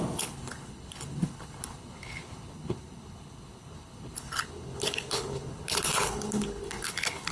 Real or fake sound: fake